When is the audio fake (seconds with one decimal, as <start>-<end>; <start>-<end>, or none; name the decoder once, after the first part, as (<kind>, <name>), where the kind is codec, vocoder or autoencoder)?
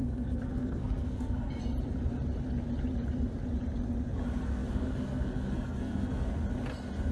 0.0-1.5 (codec, SNAC); 4.4-6.3